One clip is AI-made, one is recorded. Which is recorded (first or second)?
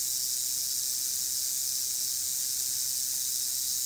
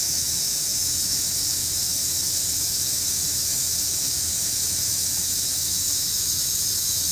first